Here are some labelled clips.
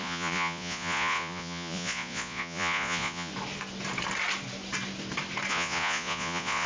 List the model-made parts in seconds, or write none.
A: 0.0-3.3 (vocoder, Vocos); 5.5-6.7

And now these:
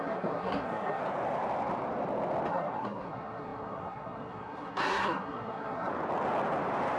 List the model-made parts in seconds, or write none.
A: 0.0-1.0 (codec, SNAC); 2.5-5.9

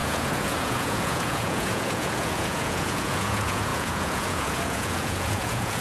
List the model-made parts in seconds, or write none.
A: 0.0-5.8 (vocoder, Vocos)

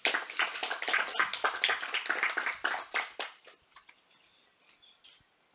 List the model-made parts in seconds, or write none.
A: none

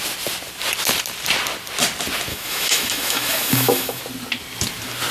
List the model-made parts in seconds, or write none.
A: 2.3-4.0 (autoencoder, DAC-VAE)

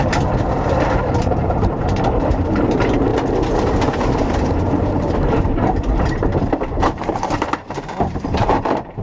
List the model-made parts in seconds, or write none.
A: 0.0-3.1 (vocoder, BigVGAN v2); 3.6-9.0

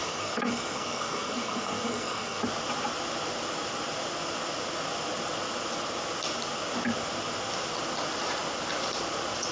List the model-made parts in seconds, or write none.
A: 0.0-2.4 (codec, SNAC)

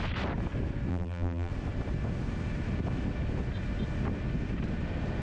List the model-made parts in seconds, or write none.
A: 0.9-1.5 (vocoder, BigVGAN v2)